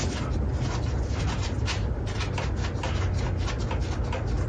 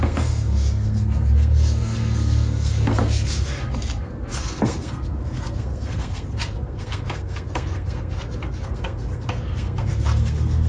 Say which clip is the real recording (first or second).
first